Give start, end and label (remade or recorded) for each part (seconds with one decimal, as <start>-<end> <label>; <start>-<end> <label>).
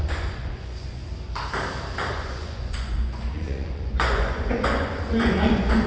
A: 0.0-1.0 remade; 1.0-2.1 recorded; 2.1-5.9 remade